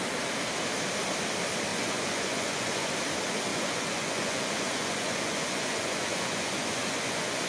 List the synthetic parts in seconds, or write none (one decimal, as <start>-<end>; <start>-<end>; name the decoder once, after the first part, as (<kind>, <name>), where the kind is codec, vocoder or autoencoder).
1.7-2.9 (vocoder, Vocos); 3.5-7.5